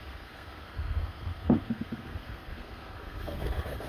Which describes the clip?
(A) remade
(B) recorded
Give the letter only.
A